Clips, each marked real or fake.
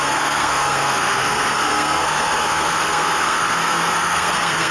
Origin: fake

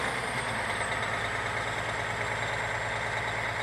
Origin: real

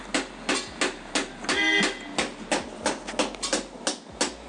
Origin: real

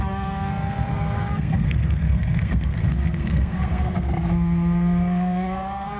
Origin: fake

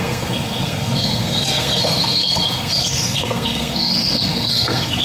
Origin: fake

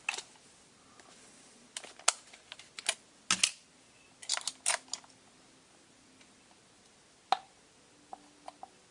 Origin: real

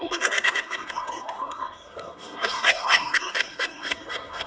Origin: fake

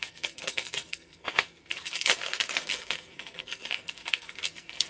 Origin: fake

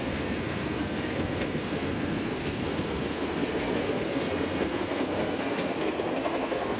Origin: fake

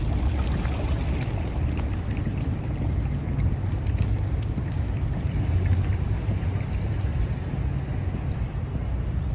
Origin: real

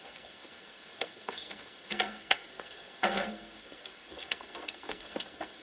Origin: fake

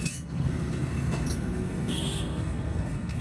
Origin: fake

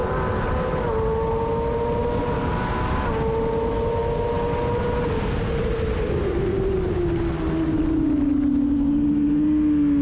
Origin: real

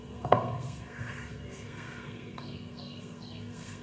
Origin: fake